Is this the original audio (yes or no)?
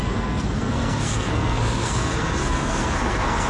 no